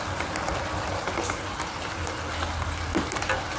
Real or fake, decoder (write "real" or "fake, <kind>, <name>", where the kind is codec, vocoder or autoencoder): real